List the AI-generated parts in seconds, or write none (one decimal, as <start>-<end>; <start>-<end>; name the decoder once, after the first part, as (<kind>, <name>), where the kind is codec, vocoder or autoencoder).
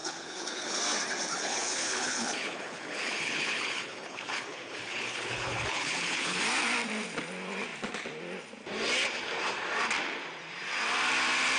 0.0-0.8 (codec, HILCodec); 1.3-6.4